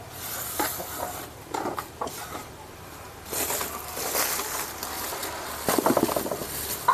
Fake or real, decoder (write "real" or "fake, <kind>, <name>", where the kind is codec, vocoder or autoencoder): real